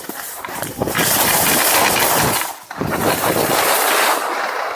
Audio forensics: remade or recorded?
recorded